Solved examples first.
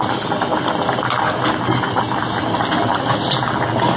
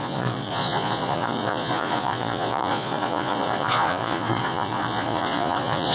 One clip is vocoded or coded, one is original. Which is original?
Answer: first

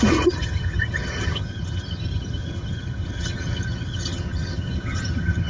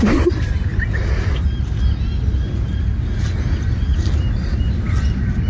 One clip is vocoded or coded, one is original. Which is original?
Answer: second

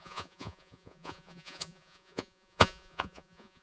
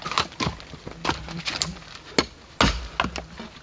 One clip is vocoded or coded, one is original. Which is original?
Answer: second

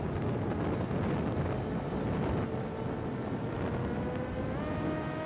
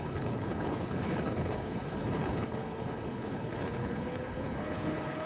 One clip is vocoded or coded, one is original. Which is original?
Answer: first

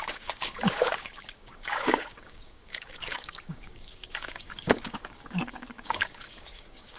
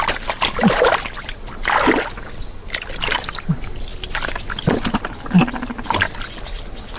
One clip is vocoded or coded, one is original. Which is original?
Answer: second